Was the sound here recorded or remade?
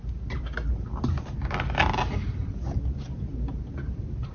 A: recorded